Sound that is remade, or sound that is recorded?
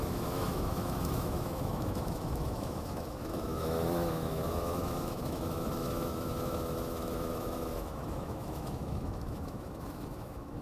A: remade